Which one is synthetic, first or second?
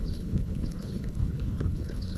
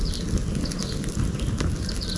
first